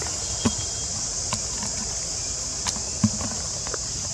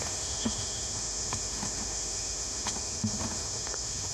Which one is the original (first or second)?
first